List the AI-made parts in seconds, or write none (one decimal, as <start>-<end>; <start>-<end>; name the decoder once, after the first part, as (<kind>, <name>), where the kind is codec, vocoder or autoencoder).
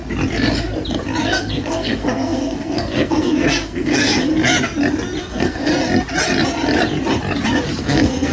1.2-4.2 (codec, SNAC); 5.2-5.7; 7.8-8.3